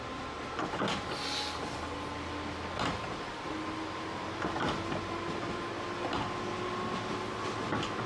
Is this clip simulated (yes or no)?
no